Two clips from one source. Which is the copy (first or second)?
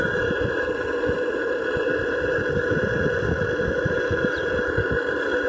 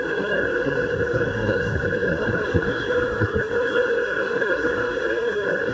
second